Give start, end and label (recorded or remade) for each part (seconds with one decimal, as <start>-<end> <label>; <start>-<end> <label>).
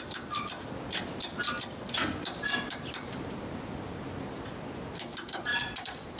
0.0-5.5 recorded; 5.5-6.2 remade